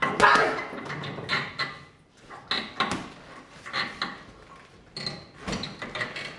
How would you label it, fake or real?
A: real